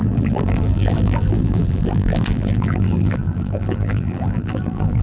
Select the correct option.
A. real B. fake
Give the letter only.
B